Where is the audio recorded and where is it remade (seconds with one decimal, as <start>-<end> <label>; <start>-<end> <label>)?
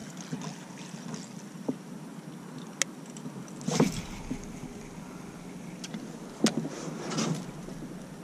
0.0-8.2 recorded